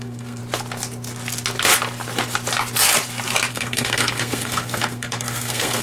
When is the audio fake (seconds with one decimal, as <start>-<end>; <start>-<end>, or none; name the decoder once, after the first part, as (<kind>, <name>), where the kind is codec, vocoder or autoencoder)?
0.0-0.4 (codec, SNAC); 3.5-5.8